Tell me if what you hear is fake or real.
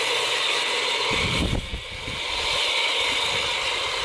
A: real